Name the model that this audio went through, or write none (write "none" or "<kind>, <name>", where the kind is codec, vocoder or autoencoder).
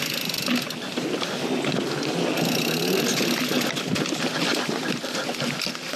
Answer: none